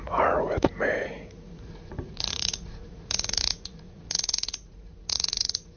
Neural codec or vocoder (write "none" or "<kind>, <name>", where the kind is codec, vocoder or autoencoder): vocoder, Vocos